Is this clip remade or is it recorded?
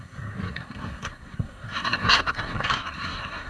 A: remade